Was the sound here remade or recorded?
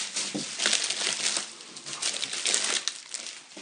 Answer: recorded